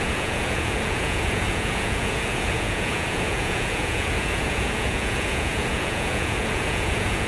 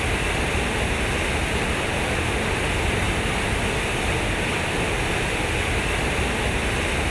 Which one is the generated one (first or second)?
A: first